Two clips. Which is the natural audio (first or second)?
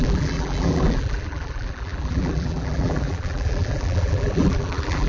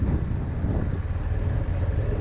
second